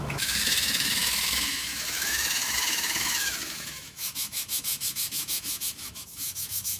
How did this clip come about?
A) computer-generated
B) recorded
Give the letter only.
A